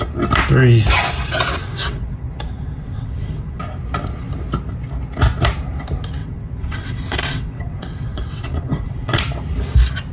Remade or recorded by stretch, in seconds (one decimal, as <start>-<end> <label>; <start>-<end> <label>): 0.0-1.6 recorded; 1.6-3.6 remade; 3.6-6.2 recorded; 6.2-9.2 remade; 9.2-10.1 recorded